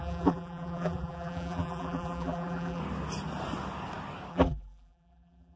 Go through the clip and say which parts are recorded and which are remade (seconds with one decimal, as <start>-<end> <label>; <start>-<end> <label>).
0.0-2.8 remade; 2.8-4.3 recorded; 4.3-5.6 remade